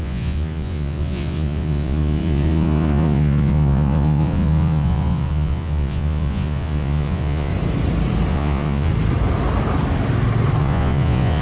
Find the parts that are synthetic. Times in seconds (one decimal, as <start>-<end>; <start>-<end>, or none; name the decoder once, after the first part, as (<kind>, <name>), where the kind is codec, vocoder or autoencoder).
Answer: 0.0-7.5 (vocoder, Vocos); 8.3-8.9; 10.6-11.4